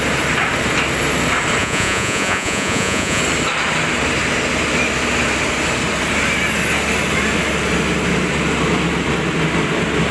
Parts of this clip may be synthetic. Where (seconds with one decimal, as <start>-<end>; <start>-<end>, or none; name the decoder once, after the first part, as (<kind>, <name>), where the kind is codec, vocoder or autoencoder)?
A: 1.6-3.2 (vocoder, Vocos)